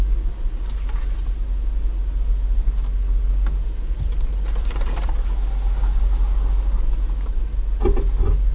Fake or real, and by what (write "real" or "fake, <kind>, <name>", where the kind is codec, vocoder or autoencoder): real